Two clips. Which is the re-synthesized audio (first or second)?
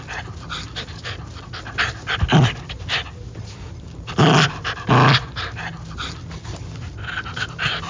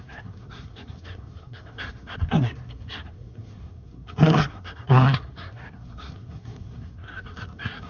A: second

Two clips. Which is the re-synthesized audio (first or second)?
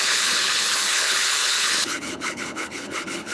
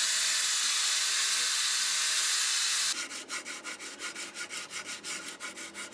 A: first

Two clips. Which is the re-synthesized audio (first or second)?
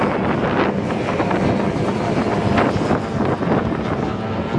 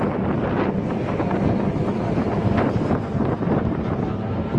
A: second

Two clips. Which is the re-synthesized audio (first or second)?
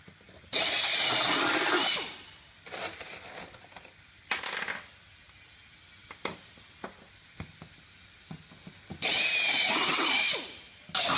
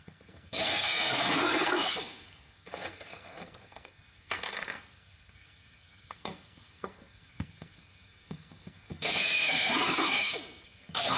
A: second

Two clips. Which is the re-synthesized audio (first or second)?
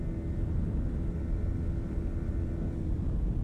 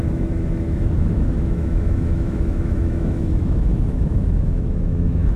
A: second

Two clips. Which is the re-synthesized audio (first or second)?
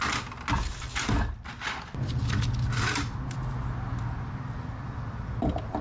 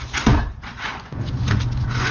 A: second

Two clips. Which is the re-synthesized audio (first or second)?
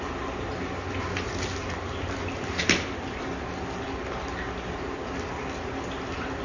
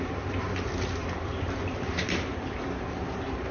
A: second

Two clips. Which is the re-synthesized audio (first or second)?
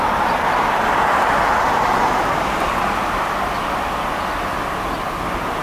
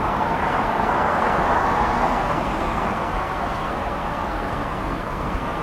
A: second